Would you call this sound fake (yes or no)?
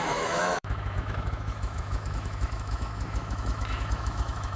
yes